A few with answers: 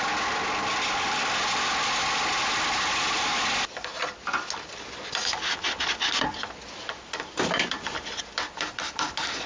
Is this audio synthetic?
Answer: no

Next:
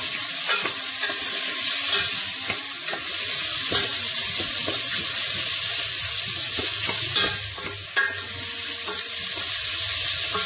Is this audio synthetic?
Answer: no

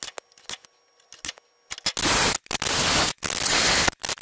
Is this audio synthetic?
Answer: no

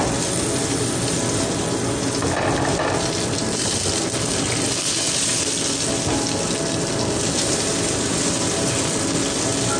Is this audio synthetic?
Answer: no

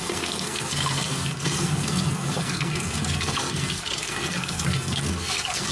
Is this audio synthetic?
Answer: yes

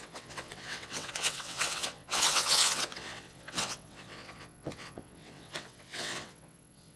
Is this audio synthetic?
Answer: yes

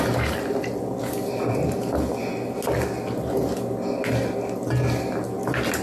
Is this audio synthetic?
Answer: no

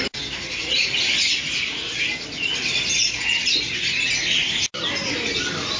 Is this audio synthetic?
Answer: no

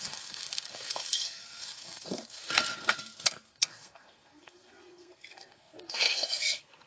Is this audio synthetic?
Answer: yes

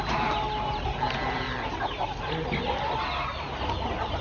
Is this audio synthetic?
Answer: no